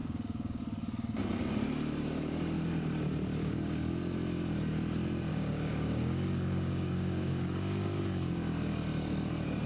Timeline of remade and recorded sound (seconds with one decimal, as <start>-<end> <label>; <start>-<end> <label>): 0.0-0.6 remade; 0.6-3.4 recorded; 3.4-3.9 remade; 3.9-5.3 recorded; 5.3-8.0 remade; 8.0-9.7 recorded